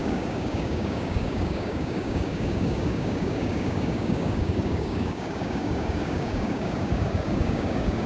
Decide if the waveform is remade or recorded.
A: remade